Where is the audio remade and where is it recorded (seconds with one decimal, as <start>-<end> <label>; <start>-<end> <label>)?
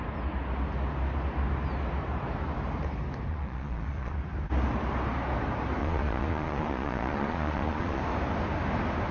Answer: 0.0-3.3 recorded; 3.3-4.1 remade; 4.1-5.8 recorded; 5.8-8.0 remade; 8.0-9.1 recorded